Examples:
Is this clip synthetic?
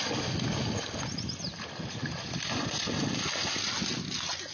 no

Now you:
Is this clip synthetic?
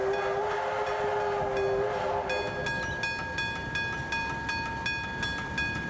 no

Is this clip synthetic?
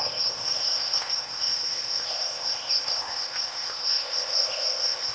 yes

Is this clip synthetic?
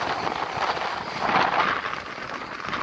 no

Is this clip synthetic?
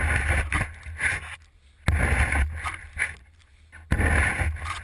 no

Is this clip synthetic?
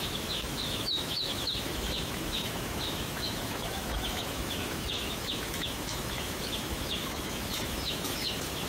yes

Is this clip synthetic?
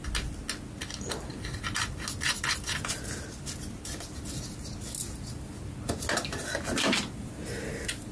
no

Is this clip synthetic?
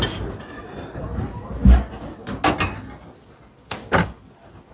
no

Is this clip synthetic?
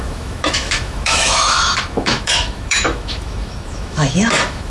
yes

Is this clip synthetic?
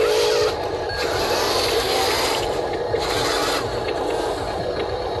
no